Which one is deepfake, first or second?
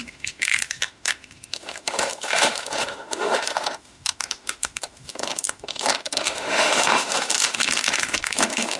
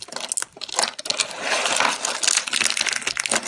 first